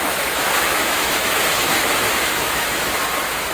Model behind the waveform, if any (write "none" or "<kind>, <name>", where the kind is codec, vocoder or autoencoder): autoencoder, DAC-VAE